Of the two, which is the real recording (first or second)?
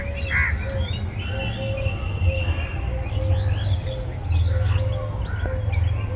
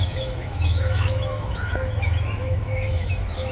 first